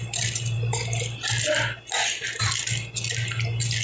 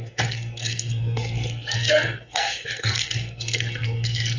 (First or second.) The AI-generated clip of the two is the second